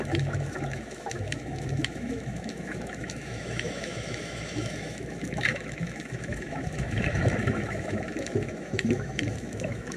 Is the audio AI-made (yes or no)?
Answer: yes